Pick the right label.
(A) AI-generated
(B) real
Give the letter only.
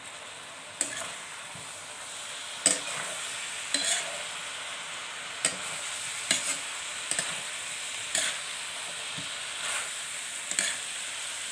B